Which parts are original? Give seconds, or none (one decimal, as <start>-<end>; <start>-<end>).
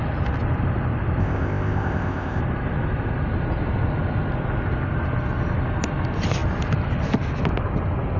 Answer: 0.0-1.2; 2.4-8.2